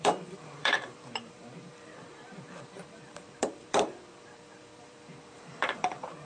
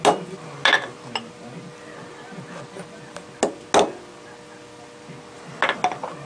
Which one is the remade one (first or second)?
first